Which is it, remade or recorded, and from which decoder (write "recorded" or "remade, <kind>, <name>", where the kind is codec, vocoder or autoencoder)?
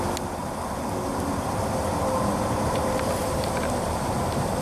recorded